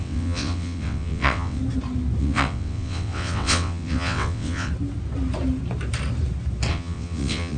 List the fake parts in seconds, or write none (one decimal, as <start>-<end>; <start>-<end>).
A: 0.0-1.6; 2.2-4.7; 6.7-7.6